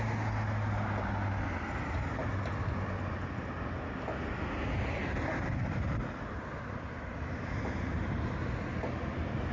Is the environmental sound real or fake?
real